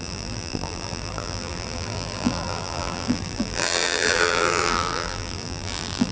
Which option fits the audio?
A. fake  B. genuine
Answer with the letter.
A